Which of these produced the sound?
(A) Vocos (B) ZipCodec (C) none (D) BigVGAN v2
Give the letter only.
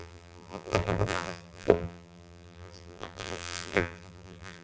D